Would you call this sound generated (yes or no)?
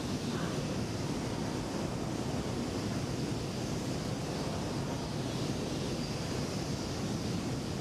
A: no